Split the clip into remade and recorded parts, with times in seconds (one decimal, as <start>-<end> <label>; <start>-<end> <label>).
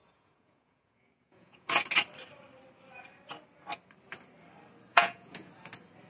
0.0-1.8 remade; 1.8-4.9 recorded; 4.9-5.5 remade; 5.5-6.1 recorded